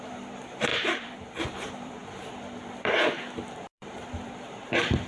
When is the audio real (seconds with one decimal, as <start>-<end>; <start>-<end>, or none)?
none